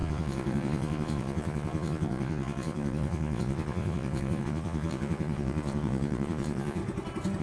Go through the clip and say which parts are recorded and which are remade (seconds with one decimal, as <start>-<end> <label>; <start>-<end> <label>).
0.0-6.8 remade; 6.8-7.4 recorded